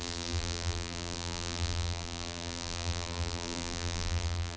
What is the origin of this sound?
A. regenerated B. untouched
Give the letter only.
A